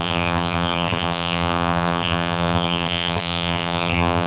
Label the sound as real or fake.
fake